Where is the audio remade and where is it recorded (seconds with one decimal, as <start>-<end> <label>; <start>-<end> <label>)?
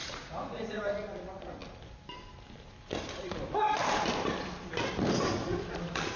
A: 0.0-0.8 remade; 0.8-6.2 recorded